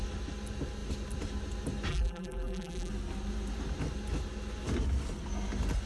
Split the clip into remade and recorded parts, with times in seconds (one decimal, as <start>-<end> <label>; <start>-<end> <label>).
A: 0.0-1.9 recorded; 1.9-2.9 remade; 2.9-5.9 recorded